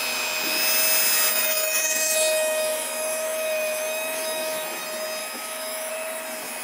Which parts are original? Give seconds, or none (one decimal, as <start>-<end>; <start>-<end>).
0.0-1.3; 4.8-5.2; 5.9-6.6